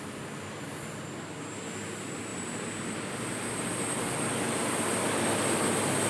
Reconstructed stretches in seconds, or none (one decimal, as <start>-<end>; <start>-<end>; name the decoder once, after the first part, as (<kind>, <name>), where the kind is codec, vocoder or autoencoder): none